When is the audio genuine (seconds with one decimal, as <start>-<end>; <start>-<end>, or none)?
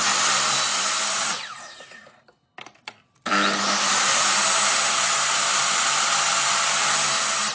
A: 0.0-0.7; 1.4-4.1; 5.7-6.3; 7.0-7.5